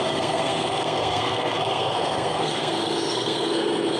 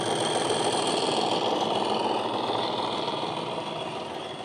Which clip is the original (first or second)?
second